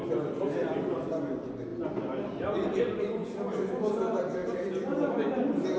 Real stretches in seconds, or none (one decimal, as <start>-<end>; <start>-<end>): 1.7-2.8